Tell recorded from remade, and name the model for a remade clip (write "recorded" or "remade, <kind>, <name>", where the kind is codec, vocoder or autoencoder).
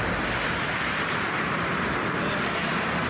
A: recorded